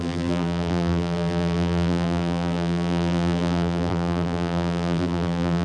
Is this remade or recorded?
remade